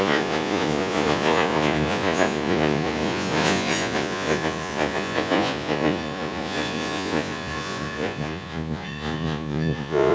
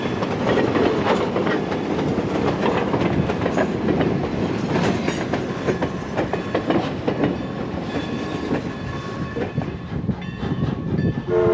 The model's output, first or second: first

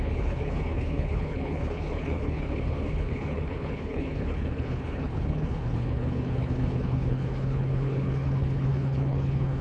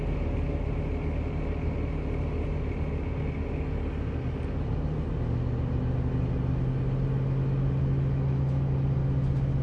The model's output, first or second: first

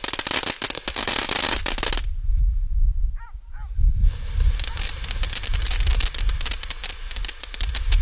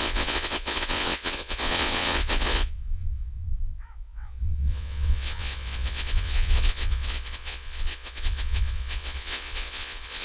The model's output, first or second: second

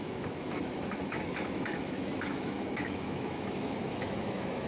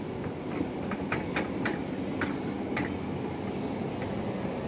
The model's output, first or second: first